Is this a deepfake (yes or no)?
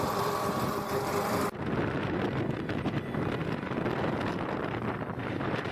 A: yes